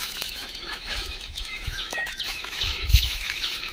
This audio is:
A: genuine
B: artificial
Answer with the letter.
B